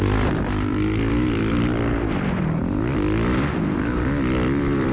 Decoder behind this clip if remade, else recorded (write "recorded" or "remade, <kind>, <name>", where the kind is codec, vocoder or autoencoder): remade, vocoder, BigVGAN v2